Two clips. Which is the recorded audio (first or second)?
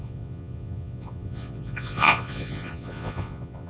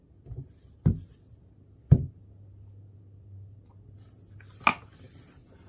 second